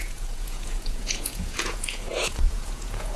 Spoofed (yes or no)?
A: yes